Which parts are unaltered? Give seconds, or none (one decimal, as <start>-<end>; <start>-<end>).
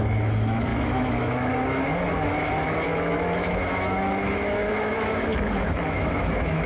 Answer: none